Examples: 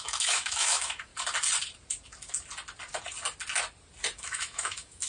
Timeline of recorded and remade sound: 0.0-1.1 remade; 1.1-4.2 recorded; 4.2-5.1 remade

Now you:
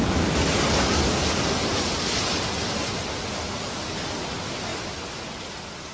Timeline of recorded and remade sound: 0.0-5.9 recorded

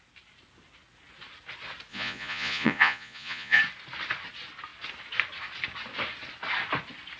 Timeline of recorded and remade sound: 0.0-1.9 recorded; 1.9-3.6 remade; 3.6-7.2 recorded

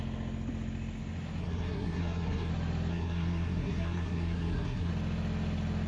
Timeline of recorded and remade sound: 0.0-1.4 recorded; 1.4-2.5 remade; 2.5-2.9 recorded; 2.9-4.9 remade; 4.9-5.9 recorded

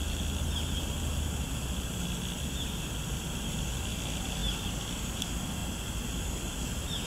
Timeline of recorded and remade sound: 0.0-7.1 recorded